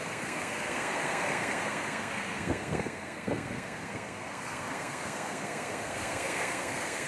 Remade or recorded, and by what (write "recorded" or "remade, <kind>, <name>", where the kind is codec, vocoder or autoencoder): remade, codec, SNAC